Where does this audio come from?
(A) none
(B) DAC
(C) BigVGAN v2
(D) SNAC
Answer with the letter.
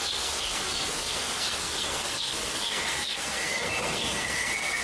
D